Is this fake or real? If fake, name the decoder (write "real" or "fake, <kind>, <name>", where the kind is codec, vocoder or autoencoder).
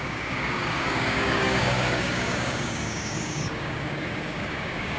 fake, codec, DAC